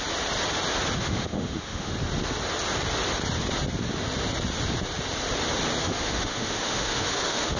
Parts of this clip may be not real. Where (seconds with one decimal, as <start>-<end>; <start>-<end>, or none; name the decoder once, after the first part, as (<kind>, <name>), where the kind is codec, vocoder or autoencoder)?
1.0-1.9 (autoencoder, DAC-VAE); 5.8-7.6